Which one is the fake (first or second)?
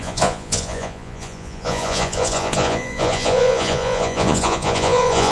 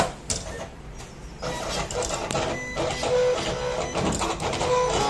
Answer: first